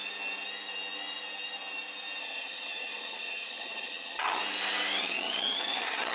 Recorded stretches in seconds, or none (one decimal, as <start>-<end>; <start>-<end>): 0.0-2.2; 4.4-5.0